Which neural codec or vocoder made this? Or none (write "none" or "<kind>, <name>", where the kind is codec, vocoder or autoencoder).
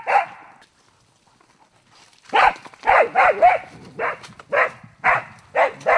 none